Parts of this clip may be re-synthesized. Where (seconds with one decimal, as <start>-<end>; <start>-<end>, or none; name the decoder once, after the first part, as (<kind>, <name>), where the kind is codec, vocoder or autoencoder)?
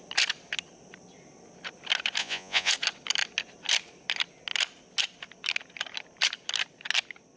2.2-2.7 (vocoder, Vocos)